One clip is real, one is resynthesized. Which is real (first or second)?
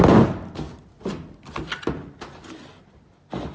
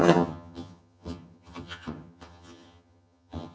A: first